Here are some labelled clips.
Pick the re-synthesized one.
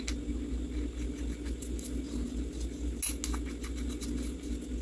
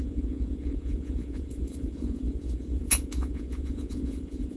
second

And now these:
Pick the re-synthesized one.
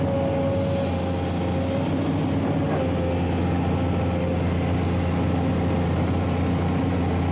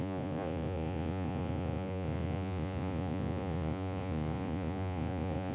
second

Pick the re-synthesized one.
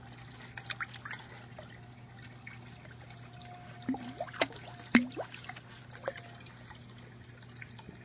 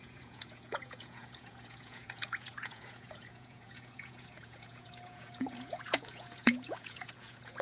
second